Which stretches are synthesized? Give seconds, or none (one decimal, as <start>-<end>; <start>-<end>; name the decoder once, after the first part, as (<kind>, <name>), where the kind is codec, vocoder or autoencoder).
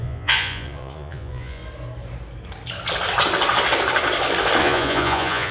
0.0-1.6 (vocoder, Vocos); 4.6-5.5